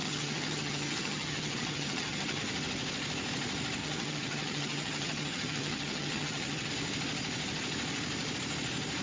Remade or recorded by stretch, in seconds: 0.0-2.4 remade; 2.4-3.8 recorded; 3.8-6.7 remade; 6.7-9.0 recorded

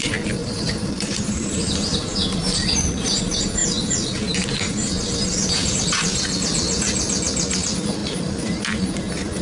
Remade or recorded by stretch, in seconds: 0.0-0.4 recorded; 0.4-3.2 remade; 3.2-8.0 recorded; 8.0-8.6 remade; 8.6-9.4 recorded

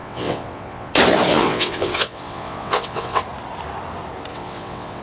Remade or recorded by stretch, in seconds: 0.0-0.9 remade; 0.9-1.3 recorded; 1.3-3.2 remade; 3.2-4.3 recorded; 4.3-5.0 remade

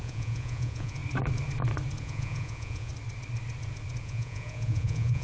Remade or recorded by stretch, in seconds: 0.0-1.0 remade; 1.0-2.0 recorded; 2.0-2.9 remade; 2.9-4.0 recorded; 4.0-5.2 remade

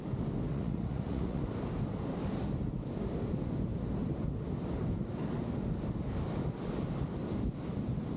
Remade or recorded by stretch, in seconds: 0.0-0.5 recorded; 0.5-1.4 remade; 1.4-8.2 recorded

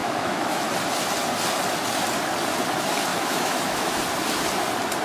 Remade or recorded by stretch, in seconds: 0.0-0.7 remade; 0.7-3.1 recorded; 3.1-4.0 remade; 4.0-5.0 recorded

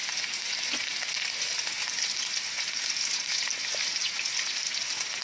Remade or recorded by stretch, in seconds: 0.0-5.2 recorded

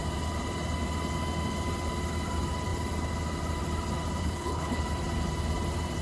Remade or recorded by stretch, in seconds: 0.0-4.2 recorded; 4.2-4.8 remade; 4.8-6.0 recorded